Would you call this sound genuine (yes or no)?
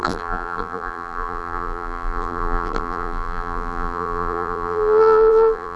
no